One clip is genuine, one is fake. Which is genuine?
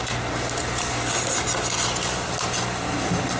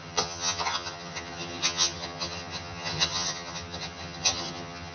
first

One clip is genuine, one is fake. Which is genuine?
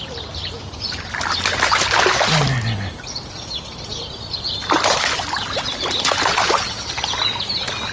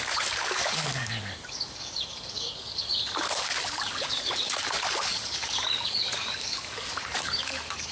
first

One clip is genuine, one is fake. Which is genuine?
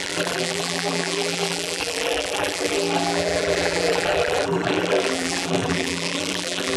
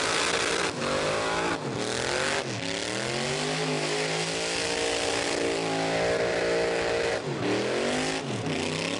second